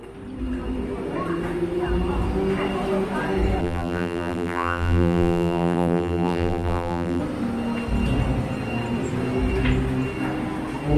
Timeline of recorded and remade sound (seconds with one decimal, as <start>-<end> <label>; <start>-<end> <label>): 0.0-3.6 recorded; 3.6-7.2 remade; 7.2-11.0 recorded